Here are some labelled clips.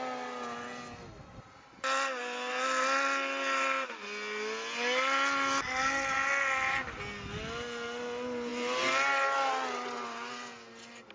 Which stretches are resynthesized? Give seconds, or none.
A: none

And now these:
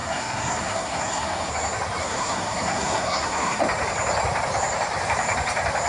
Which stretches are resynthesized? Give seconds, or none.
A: 0.0-1.5 (codec, SNAC); 2.0-3.6